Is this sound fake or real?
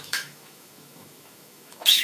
fake